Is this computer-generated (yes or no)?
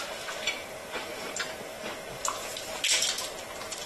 no